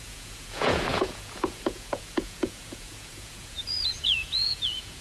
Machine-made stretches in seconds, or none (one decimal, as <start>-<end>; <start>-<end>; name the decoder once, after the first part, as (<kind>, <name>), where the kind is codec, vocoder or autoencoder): 0.0-5.0 (vocoder, Vocos)